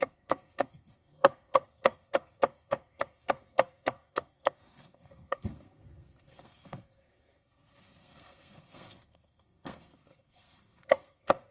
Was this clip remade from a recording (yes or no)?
yes